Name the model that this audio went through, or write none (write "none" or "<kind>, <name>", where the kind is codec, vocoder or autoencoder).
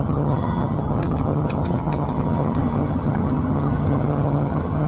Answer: vocoder, HiFi-GAN